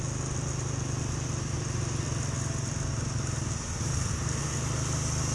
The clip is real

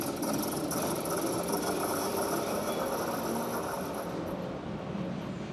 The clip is real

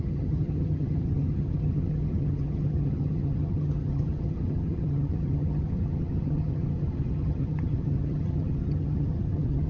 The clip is fake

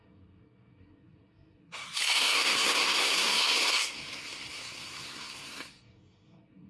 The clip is fake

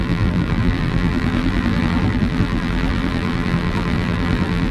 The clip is fake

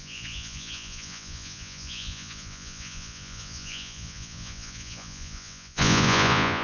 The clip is fake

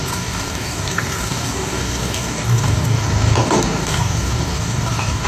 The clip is fake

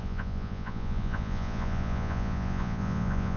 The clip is fake